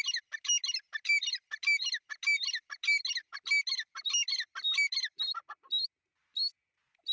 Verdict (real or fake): real